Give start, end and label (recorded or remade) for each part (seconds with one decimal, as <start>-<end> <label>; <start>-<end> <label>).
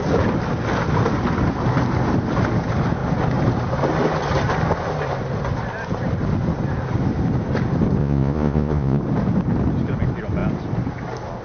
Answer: 0.0-8.0 recorded; 8.0-9.0 remade; 9.0-11.4 recorded